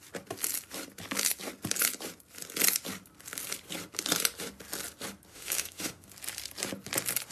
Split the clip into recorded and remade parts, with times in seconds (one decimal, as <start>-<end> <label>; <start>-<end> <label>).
0.0-5.3 recorded; 5.3-6.1 remade; 6.1-7.3 recorded